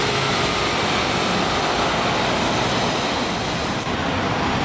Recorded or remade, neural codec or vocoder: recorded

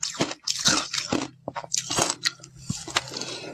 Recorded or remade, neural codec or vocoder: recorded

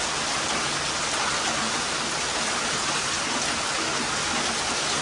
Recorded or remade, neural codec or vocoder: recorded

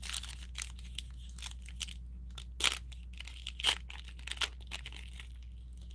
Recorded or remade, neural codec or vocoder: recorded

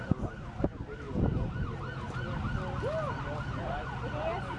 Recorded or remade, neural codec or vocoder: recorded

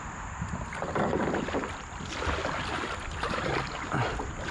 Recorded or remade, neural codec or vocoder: recorded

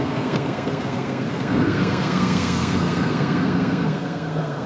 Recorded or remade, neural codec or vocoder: remade, codec, SNAC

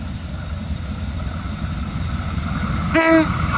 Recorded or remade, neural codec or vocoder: recorded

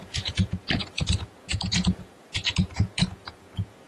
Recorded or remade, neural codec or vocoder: remade, vocoder, Vocos